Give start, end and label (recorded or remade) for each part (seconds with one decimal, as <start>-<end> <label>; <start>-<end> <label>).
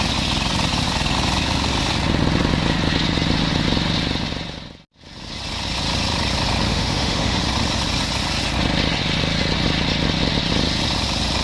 0.0-6.7 recorded; 6.7-7.4 remade; 7.4-11.4 recorded